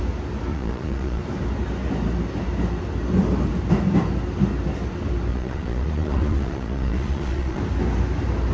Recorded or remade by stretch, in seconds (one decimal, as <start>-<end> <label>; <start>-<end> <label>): 0.0-0.5 recorded; 0.5-1.2 remade; 1.2-5.3 recorded; 5.3-7.6 remade; 7.6-8.5 recorded

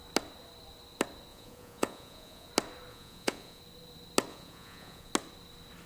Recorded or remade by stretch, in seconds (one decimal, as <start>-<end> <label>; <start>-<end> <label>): 0.0-1.3 recorded; 1.3-2.5 remade; 2.5-2.9 recorded; 2.9-3.6 remade; 3.6-4.3 recorded; 4.3-5.1 remade; 5.1-5.9 recorded

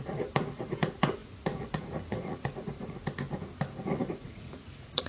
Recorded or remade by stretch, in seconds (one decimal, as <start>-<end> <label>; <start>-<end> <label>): 0.0-3.0 remade; 3.0-3.8 recorded; 3.8-5.1 remade

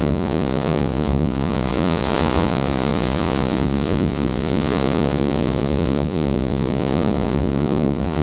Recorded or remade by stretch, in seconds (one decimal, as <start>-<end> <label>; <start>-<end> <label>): 0.0-8.2 remade

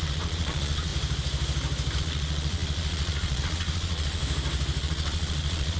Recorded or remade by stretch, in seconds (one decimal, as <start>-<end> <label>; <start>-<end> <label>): 0.0-0.9 remade; 0.9-2.0 recorded; 2.0-4.2 remade; 4.2-4.8 recorded; 4.8-5.8 remade

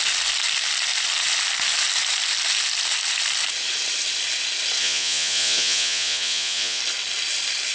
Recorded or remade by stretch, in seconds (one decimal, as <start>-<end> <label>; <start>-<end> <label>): 0.0-4.8 recorded; 4.8-6.8 remade; 6.8-7.7 recorded

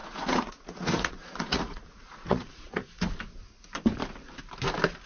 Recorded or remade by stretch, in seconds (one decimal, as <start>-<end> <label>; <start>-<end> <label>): 0.0-3.1 remade; 3.1-5.1 recorded

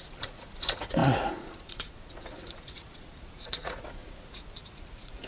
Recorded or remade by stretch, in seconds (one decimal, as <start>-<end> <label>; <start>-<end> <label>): 0.0-5.3 remade